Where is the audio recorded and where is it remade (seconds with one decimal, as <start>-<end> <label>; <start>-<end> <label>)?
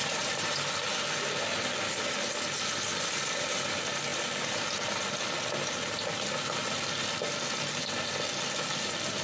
0.0-0.5 remade; 0.5-9.2 recorded